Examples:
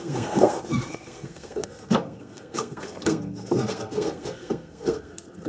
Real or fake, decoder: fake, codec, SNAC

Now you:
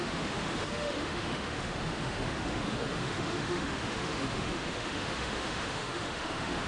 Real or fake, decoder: fake, autoencoder, DAC-VAE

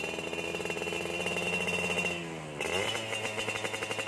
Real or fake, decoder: real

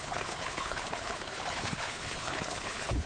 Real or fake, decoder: fake, codec, HILCodec